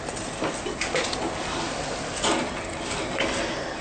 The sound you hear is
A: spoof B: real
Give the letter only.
B